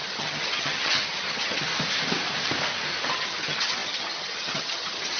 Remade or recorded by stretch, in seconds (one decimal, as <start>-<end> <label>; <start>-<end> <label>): 0.0-1.7 remade; 1.7-3.1 recorded; 3.1-5.2 remade

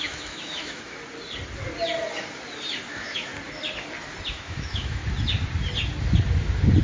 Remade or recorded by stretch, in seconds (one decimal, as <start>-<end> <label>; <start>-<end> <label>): 0.0-1.0 remade; 1.0-2.9 recorded; 2.9-3.3 remade; 3.3-4.3 recorded; 4.3-5.0 remade; 5.0-6.8 recorded

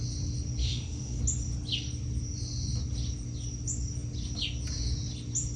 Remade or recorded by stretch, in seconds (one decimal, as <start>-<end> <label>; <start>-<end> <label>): 0.0-0.6 recorded; 0.6-1.2 remade; 1.2-5.6 recorded

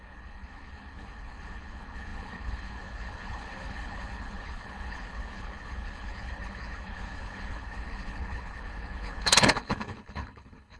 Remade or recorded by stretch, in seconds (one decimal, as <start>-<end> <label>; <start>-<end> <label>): 0.0-10.8 remade

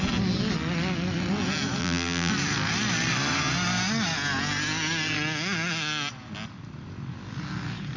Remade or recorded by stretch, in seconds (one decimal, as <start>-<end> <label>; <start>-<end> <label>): 0.0-1.8 recorded; 1.8-2.3 remade; 2.3-8.0 recorded